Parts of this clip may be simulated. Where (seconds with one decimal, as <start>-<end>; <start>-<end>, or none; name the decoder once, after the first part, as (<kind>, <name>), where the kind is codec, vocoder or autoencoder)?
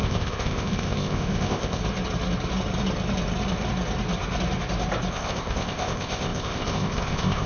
0.0-1.8 (codec, ZipCodec); 5.1-7.5